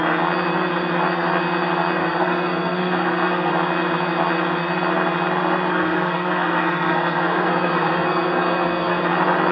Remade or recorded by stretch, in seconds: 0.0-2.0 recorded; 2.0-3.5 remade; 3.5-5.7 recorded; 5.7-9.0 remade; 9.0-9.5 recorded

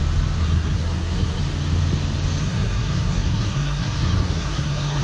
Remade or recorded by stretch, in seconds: 0.0-0.4 recorded; 0.4-1.4 remade; 1.4-2.4 recorded; 2.4-5.0 remade

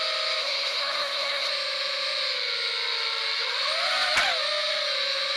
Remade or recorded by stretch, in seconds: 0.0-0.4 recorded; 0.4-1.5 remade; 1.5-5.4 recorded

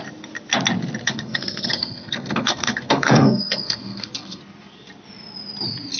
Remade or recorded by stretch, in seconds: 0.0-1.0 recorded; 1.0-4.4 remade; 4.4-6.0 recorded

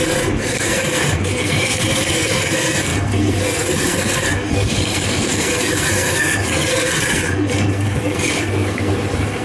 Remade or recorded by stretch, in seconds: 0.0-9.4 remade

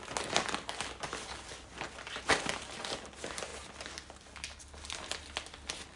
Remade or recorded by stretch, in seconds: 0.0-6.0 recorded